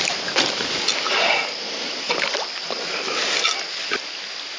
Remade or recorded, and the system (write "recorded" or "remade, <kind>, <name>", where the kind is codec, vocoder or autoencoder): recorded